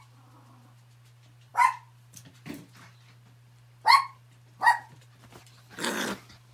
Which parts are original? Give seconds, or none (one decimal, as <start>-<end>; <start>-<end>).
0.0-6.5